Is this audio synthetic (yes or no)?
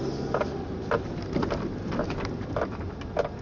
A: no